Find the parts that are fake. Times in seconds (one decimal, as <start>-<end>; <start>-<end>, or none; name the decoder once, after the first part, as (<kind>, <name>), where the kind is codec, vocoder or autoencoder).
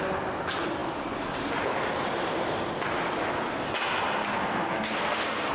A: 4.4-5.5 (codec, SNAC)